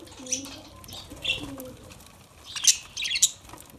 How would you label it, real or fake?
real